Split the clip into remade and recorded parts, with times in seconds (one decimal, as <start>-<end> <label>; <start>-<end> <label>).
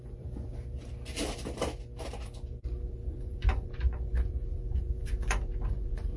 0.0-0.5 remade; 0.5-2.9 recorded; 2.9-6.2 remade